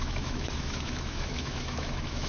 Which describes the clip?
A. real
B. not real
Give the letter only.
B